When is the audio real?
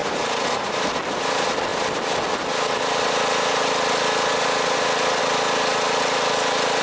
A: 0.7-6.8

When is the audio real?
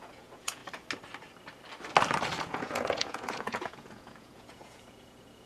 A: 0.6-2.4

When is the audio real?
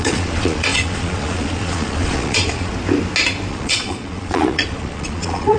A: 2.7-3.5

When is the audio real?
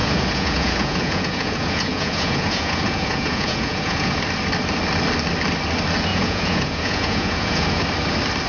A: 4.2-6.1; 7.8-8.5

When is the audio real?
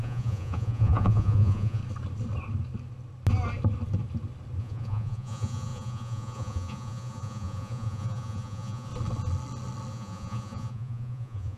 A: 1.8-4.6; 8.9-9.9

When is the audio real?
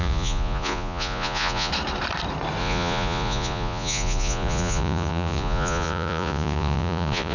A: 1.7-2.6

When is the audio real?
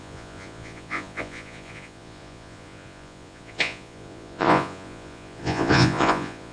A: none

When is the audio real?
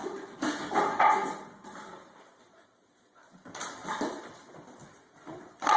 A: 0.0-2.2; 3.8-4.7